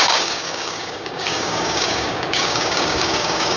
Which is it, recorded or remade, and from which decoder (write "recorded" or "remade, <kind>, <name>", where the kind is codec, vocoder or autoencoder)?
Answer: remade, codec, DAC